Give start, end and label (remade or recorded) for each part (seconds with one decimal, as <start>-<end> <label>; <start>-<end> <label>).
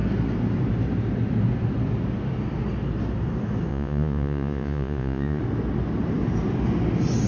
0.0-3.7 recorded; 3.7-5.4 remade; 5.4-7.3 recorded